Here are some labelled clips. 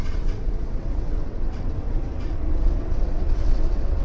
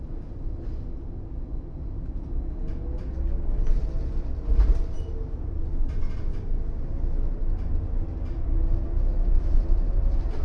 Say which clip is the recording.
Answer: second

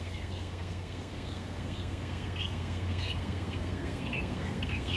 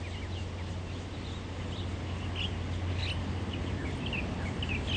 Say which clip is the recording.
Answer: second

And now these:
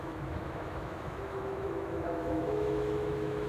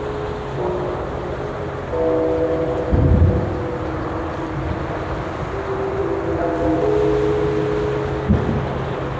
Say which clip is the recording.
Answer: second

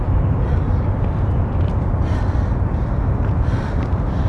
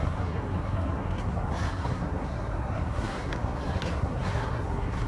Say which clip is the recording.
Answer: first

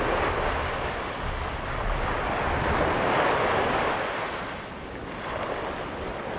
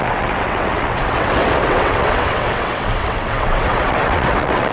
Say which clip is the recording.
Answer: first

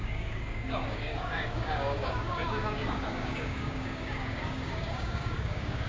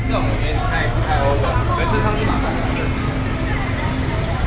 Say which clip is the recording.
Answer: second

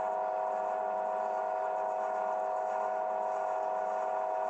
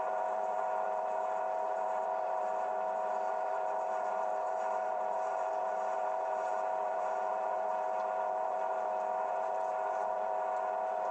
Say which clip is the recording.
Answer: first